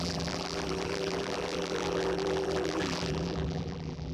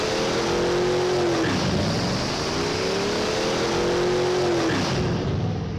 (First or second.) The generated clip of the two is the first